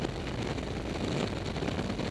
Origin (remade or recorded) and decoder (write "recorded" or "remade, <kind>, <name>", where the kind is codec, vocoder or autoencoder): recorded